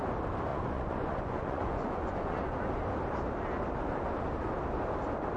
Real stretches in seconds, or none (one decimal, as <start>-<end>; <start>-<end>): 0.0-0.5; 2.7-5.4